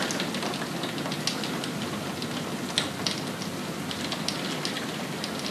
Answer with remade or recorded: recorded